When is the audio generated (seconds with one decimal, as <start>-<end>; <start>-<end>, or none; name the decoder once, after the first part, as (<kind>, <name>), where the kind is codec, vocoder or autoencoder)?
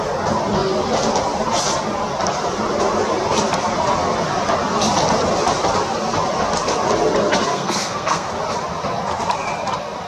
7.5-8.3 (codec, SNAC)